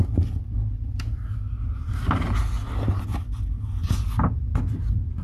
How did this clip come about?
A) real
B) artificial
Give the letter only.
A